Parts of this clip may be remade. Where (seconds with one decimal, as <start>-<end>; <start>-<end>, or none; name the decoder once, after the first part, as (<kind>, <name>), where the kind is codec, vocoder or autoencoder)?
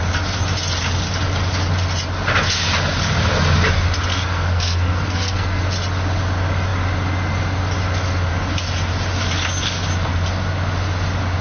4.1-5.6 (codec, SNAC)